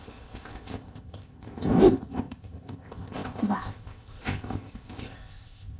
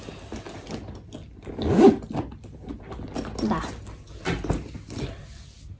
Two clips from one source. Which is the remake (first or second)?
first